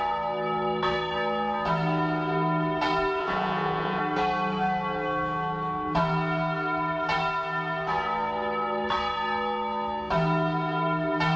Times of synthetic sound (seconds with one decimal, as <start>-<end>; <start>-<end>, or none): 3.2-4.0